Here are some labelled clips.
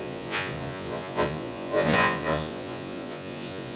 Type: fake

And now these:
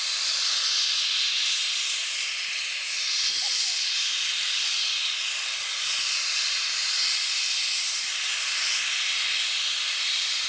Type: real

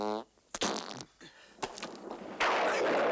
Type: real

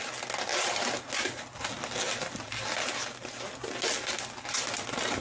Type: real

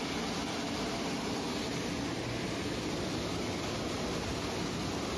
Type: real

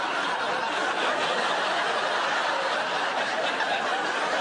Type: real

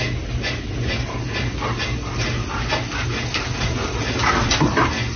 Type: real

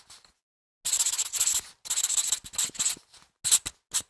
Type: real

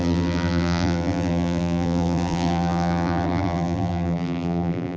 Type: fake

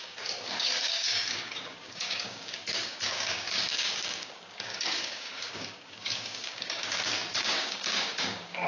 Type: fake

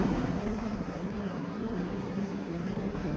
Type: fake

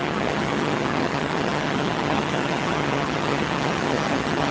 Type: fake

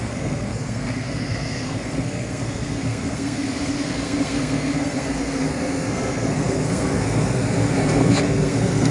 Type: fake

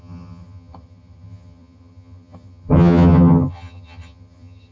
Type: fake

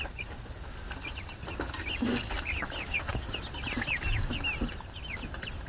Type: real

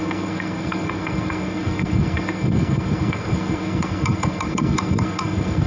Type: fake